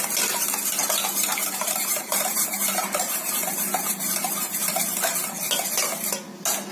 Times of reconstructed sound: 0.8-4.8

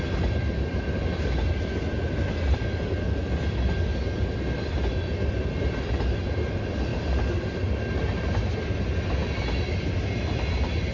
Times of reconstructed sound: none

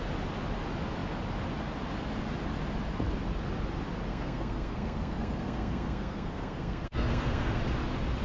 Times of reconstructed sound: 4.1-7.6

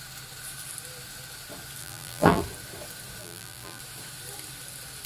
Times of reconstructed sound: 1.8-2.4; 3.2-3.8

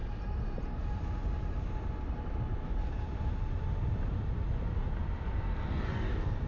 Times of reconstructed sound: none

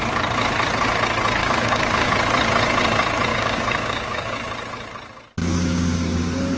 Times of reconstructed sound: 1.4-2.1; 3.3-4.4; 5.4-6.6

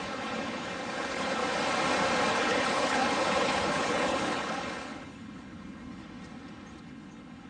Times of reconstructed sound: 0.0-1.4; 2.3-6.0; 6.8-7.5

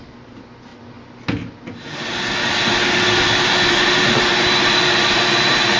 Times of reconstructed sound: none